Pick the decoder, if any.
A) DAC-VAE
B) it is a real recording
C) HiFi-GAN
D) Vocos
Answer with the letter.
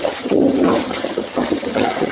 C